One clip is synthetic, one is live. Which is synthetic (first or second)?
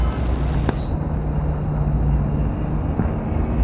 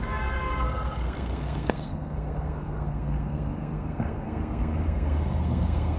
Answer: second